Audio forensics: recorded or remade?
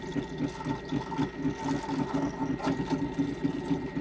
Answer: recorded